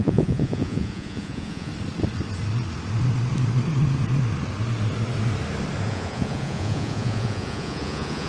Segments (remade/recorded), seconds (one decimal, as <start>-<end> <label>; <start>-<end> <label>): 0.0-1.7 remade; 1.7-5.9 recorded; 5.9-8.3 remade